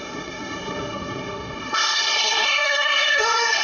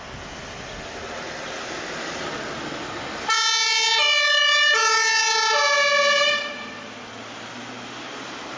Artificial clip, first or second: first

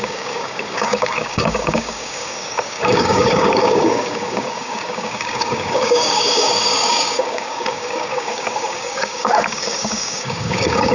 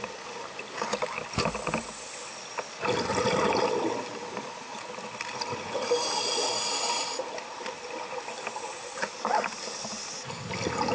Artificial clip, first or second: first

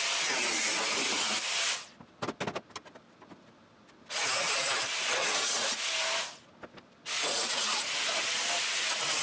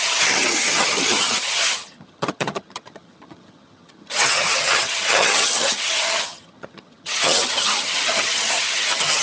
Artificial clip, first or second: second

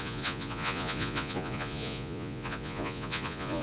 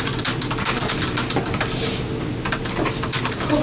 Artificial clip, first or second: first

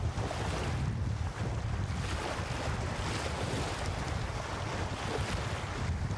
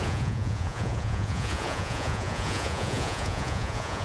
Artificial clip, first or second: second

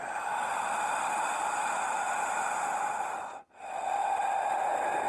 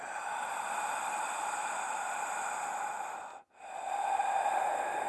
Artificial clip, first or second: first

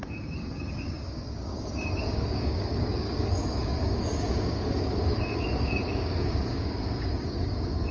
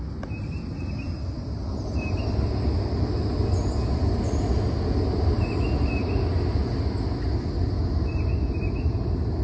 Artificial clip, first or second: first